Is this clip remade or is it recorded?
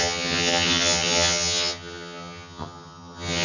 remade